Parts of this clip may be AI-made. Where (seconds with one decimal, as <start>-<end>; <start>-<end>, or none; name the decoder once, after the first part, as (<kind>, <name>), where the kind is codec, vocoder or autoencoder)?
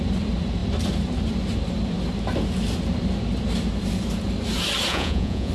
4.9-5.5 (vocoder, Vocos)